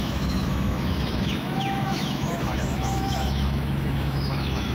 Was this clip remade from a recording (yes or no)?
yes